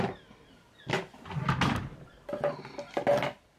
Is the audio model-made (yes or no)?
no